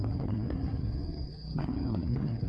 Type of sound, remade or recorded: remade